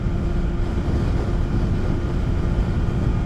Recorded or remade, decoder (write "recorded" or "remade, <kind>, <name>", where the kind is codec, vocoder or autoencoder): recorded